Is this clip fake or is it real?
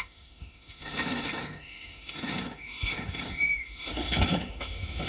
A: fake